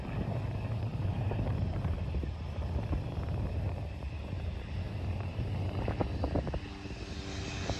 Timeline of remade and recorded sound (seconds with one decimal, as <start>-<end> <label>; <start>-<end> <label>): 0.0-0.9 recorded; 0.9-2.0 remade; 2.0-7.8 recorded